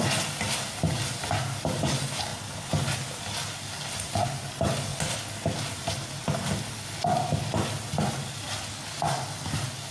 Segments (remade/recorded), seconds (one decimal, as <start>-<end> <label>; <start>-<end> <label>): 0.0-9.9 recorded